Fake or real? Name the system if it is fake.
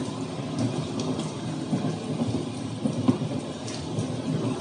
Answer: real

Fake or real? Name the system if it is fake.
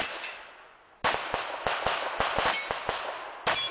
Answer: real